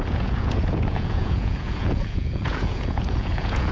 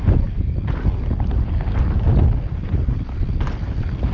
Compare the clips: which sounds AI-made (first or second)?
first